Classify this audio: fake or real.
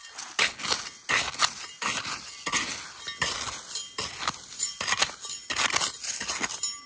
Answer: real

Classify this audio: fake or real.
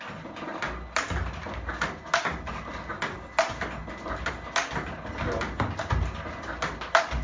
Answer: real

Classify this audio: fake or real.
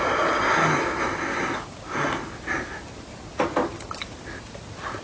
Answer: real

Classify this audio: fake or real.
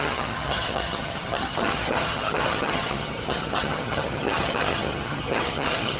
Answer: fake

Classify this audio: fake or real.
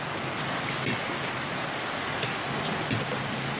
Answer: real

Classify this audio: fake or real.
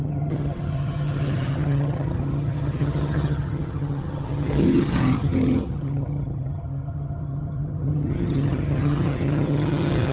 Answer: fake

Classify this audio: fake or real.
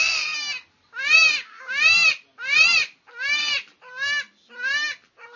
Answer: real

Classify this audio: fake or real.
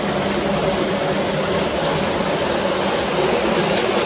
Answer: real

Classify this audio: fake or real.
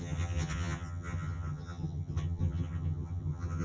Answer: fake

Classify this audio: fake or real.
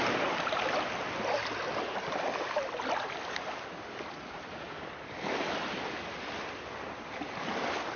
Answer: real